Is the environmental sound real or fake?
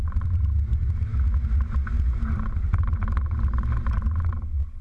real